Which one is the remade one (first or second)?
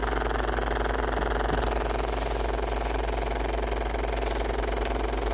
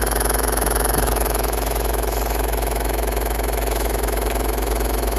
second